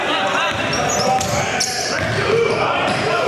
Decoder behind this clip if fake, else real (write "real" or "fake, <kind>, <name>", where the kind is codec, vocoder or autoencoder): fake, vocoder, BigVGAN v2